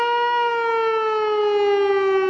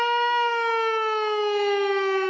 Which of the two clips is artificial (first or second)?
second